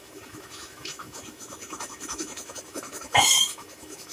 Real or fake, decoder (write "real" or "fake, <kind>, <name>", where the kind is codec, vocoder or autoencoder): fake, autoencoder, DAC-VAE